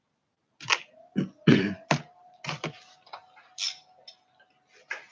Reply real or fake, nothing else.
real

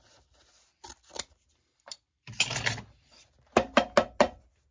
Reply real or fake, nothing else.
real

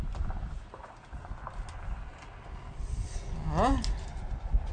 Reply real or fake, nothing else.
real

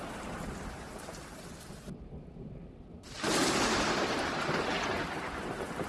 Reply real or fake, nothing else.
real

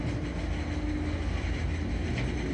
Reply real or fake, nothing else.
real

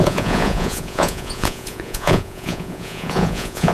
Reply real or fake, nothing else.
fake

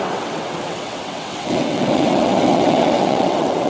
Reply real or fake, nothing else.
fake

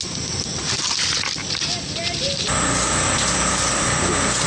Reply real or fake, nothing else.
real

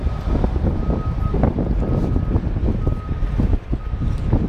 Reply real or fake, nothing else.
real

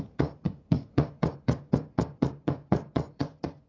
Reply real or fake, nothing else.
fake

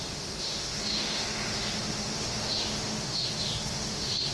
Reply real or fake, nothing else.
fake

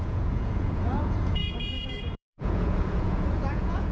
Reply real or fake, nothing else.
fake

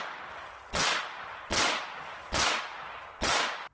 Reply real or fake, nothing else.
real